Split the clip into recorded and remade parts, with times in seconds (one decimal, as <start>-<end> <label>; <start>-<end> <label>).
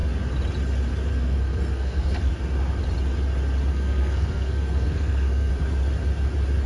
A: 0.0-1.1 recorded; 1.1-2.3 remade; 2.3-3.7 recorded; 3.7-5.5 remade; 5.5-6.7 recorded